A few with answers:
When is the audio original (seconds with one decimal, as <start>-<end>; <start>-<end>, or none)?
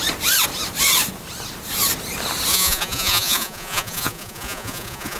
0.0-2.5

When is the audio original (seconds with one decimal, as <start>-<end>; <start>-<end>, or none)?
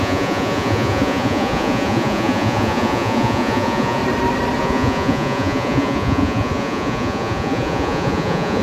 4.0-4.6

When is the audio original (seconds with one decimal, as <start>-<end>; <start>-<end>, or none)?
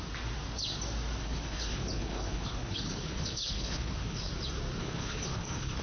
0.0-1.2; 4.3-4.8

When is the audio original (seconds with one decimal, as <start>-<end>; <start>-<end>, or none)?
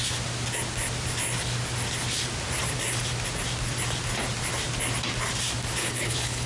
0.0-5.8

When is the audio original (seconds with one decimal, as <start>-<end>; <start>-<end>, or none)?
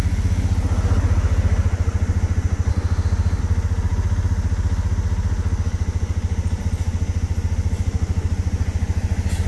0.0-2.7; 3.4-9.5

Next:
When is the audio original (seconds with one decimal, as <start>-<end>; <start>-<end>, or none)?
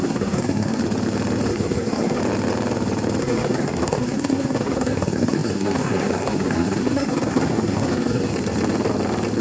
0.8-1.5; 2.2-3.2; 8.3-9.4